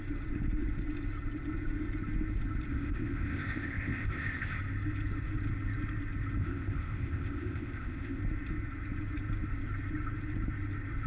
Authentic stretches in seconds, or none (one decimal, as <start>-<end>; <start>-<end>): 0.0-2.7; 4.6-6.4; 8.2-11.1